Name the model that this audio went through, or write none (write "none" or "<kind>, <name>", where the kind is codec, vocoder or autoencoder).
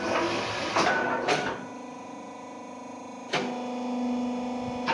none